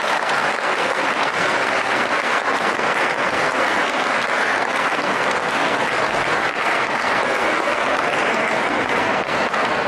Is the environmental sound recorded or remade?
remade